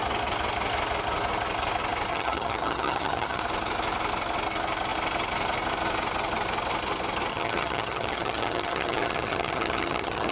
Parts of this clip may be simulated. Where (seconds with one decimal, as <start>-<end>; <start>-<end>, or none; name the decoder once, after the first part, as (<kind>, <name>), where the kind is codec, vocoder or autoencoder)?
2.1-3.4 (vocoder, HiFi-GAN); 7.3-10.3